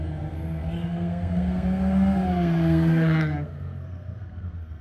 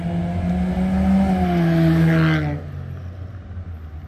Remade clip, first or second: first